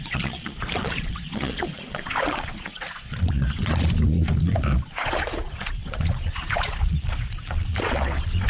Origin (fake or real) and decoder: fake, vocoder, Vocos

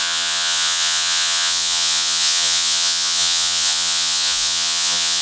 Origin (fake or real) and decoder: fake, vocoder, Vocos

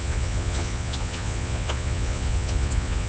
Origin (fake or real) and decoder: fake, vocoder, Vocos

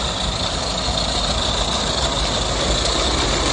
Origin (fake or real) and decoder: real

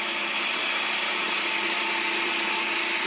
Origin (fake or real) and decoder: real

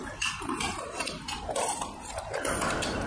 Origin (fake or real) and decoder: real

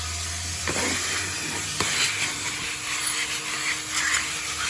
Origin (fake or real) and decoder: real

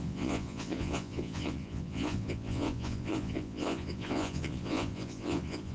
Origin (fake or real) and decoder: fake, vocoder, Vocos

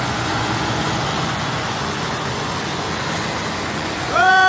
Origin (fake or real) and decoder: fake, vocoder, Vocos